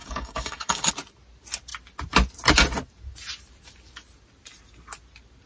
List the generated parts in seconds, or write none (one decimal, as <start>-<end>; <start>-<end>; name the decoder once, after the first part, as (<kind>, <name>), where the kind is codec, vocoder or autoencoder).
0.0-0.9 (codec, DAC)